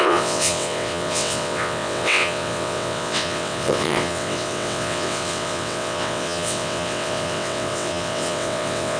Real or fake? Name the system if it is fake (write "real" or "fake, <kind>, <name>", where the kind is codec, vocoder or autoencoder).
fake, vocoder, WaveNeXt